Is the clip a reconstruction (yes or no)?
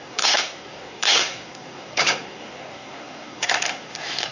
yes